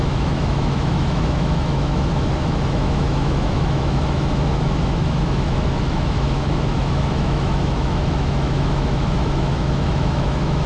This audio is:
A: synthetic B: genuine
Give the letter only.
A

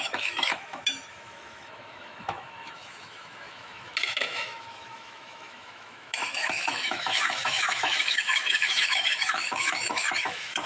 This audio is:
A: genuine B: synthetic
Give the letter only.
B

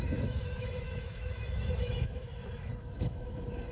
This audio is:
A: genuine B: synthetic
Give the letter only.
B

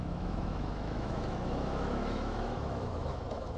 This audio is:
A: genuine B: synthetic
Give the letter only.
B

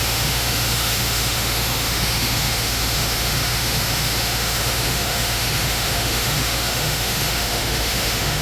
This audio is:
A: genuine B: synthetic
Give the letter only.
B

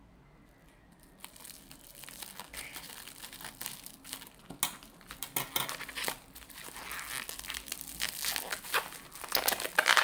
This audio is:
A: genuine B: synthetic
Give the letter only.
A